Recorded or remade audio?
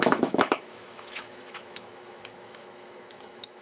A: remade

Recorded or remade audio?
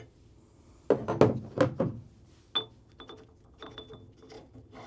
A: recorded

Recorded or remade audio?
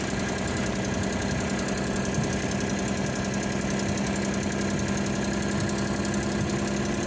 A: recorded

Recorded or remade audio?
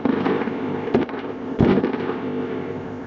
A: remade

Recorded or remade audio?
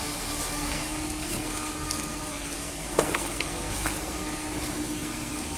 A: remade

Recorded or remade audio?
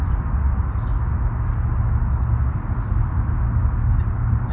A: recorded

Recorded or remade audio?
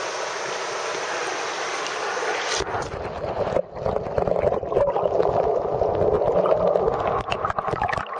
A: recorded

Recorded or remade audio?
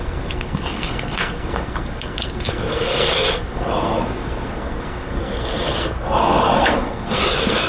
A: remade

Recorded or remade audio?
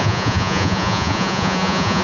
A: remade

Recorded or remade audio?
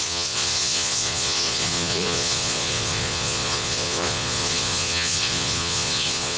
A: remade